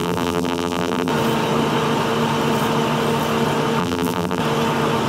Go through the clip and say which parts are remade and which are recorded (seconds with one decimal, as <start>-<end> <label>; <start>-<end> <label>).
0.0-1.1 remade; 1.1-3.8 recorded; 3.8-4.4 remade; 4.4-5.1 recorded